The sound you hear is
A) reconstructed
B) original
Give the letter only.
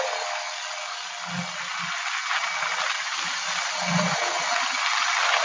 B